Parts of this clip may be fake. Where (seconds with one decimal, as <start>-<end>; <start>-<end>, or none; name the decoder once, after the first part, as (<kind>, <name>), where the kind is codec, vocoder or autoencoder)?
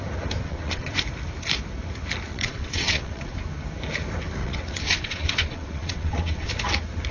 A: 0.4-1.0 (vocoder, WaveNeXt); 2.3-3.4; 4.4-6.5